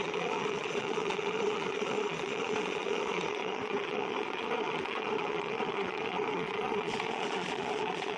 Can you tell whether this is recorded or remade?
remade